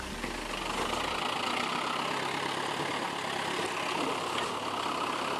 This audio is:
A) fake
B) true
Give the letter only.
B